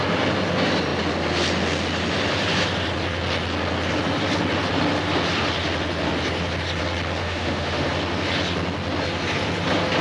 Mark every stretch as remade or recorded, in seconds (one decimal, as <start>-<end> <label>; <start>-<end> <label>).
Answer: 0.0-7.2 recorded; 7.2-7.9 remade; 7.9-10.0 recorded